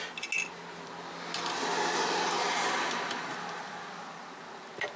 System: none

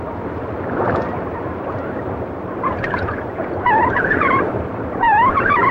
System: vocoder, BigVGAN v2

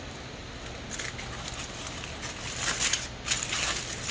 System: none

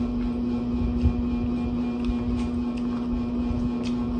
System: none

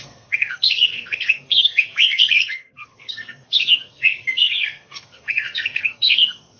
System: codec, SNAC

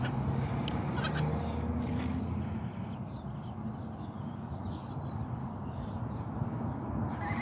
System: none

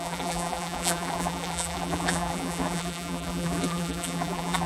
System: vocoder, BigVGAN v2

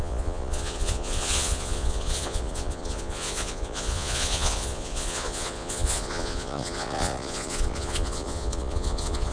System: vocoder, Vocos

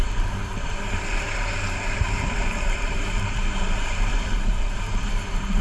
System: vocoder, BigVGAN v2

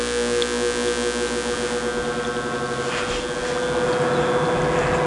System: none